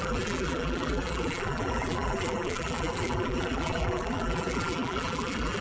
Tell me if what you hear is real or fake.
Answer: fake